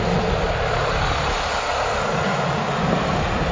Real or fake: real